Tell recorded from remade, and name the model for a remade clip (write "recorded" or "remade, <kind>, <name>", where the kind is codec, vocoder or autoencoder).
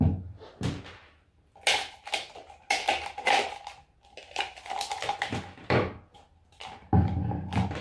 recorded